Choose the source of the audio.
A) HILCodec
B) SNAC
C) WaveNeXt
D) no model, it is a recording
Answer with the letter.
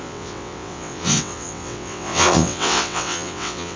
C